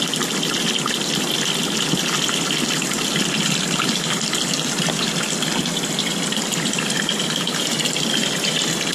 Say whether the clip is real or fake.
real